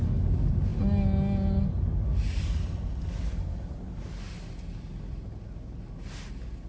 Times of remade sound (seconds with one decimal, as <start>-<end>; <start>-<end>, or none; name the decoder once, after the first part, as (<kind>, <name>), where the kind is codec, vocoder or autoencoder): none